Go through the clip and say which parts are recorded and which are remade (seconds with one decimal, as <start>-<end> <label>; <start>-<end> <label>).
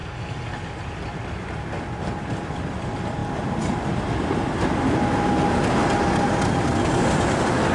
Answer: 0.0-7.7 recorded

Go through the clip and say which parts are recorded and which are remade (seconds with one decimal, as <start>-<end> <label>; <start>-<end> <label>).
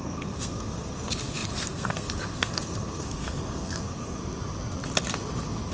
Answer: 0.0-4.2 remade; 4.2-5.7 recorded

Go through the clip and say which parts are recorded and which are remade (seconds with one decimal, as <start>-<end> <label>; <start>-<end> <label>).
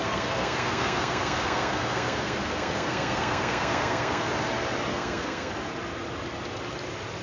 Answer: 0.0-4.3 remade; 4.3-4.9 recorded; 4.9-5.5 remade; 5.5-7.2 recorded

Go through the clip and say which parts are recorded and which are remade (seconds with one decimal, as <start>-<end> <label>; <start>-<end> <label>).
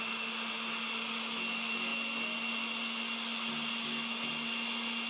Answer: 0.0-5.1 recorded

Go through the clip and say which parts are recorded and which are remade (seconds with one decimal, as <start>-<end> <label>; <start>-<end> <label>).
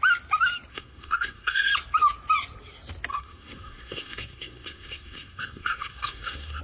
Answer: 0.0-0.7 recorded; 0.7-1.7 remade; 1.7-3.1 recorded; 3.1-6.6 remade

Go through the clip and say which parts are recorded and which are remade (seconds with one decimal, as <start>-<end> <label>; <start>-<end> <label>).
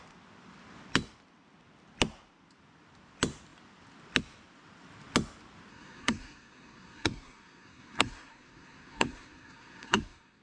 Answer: 0.0-5.7 recorded; 5.7-10.4 remade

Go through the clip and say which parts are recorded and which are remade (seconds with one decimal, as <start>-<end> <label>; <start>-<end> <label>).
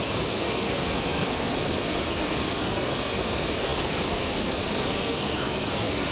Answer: 0.0-6.1 remade